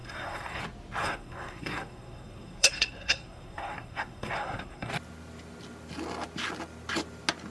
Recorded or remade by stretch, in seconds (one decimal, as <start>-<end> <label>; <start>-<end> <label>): 0.0-0.6 remade; 0.6-1.0 recorded; 1.0-4.9 remade; 4.9-7.5 recorded